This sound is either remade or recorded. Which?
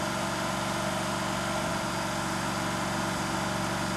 recorded